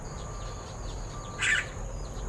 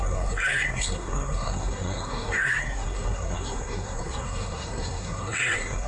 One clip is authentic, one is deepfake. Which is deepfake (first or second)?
second